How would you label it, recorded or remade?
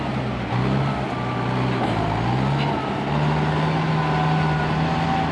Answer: recorded